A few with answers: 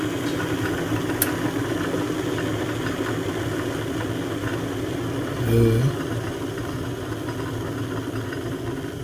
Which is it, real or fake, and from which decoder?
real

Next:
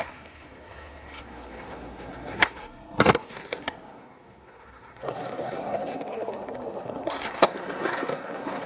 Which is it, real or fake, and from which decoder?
fake, codec, SNAC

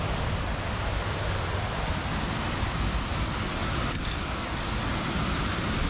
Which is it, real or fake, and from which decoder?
real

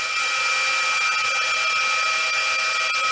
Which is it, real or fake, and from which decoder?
real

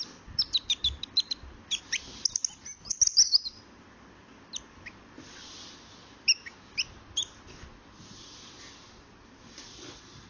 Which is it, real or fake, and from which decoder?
real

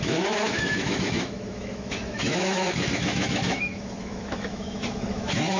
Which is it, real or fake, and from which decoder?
fake, autoencoder, DAC-VAE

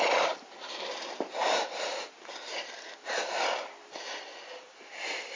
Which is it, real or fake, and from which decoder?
fake, vocoder, BigVGAN v2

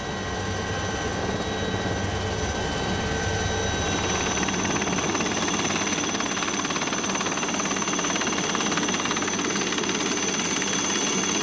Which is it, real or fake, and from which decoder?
real